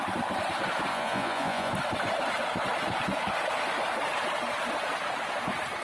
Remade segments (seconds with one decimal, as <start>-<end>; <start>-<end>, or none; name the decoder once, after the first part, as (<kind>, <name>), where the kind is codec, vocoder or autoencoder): 0.9-1.7 (vocoder, Vocos)

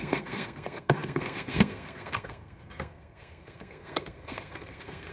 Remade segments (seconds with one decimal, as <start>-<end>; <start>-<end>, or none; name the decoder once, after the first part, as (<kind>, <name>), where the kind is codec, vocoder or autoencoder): 0.0-5.1 (codec, SNAC)